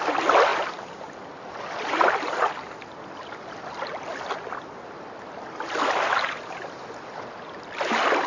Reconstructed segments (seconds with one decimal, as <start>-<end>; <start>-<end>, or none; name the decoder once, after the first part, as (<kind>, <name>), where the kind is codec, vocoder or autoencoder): none